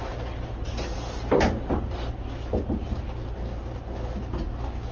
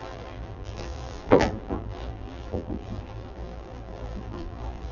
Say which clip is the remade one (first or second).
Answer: second